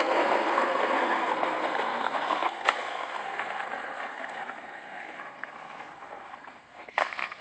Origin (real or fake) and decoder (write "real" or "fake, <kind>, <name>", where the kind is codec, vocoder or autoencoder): fake, codec, SNAC